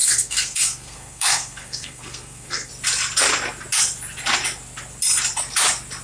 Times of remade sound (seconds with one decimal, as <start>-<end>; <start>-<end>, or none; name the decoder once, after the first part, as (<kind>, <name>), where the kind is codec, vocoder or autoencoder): 0.0-2.7 (codec, SNAC)